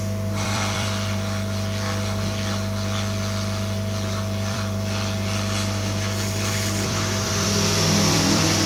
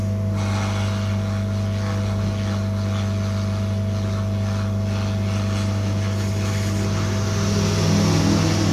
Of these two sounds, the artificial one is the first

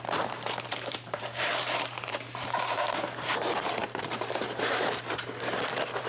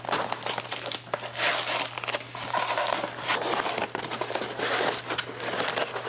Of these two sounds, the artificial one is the first